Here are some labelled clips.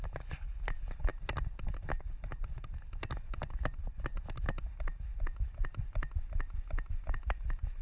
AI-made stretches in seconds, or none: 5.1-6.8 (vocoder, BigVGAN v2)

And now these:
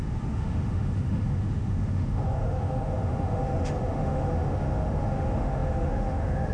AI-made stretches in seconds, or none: 0.0-6.5 (autoencoder, DAC-VAE)